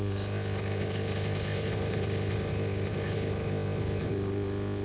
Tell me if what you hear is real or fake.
fake